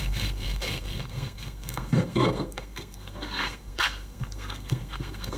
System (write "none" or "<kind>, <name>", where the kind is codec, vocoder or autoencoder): codec, SNAC